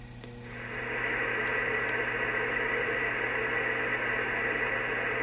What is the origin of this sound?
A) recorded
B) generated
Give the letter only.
A